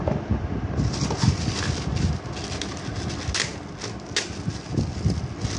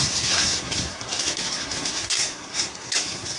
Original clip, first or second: first